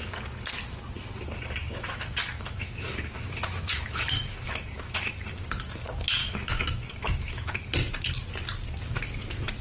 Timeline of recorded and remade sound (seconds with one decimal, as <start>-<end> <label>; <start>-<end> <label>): 0.0-1.6 recorded; 1.6-5.1 remade; 5.1-6.2 recorded; 6.2-7.6 remade; 7.6-9.6 recorded